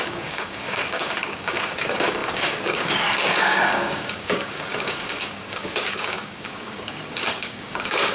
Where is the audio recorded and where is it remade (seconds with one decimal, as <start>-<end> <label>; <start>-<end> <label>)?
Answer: 0.0-8.1 remade